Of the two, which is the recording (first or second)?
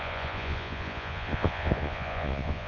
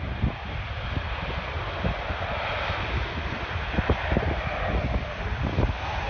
second